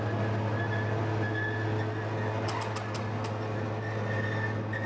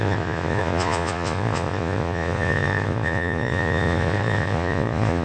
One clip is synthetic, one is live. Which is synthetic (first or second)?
second